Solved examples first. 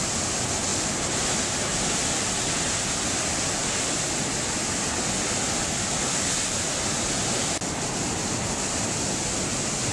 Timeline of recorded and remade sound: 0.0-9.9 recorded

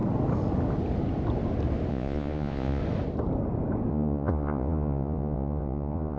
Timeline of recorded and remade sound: 0.0-1.9 recorded; 1.9-2.8 remade; 2.8-3.9 recorded; 3.9-6.2 remade

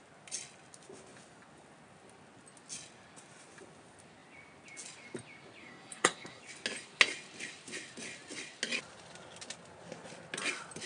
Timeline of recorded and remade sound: 0.0-5.6 recorded; 5.6-6.4 remade; 6.4-10.9 recorded

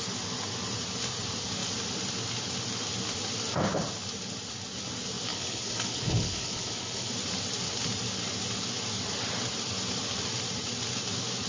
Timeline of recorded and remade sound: 0.0-5.3 recorded; 5.3-7.1 remade; 7.1-11.5 recorded

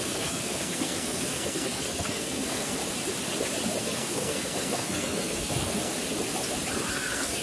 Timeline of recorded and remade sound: 0.0-2.8 remade; 2.8-3.8 recorded; 3.8-5.9 remade; 5.9-6.9 recorded; 6.9-7.4 remade